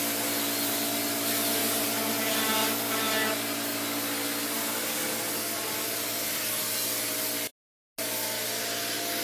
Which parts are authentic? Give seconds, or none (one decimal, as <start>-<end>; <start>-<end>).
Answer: 0.0-9.2